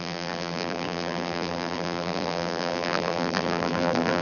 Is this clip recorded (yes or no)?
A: no